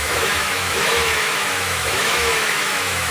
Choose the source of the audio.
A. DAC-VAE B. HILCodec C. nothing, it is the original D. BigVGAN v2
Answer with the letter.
A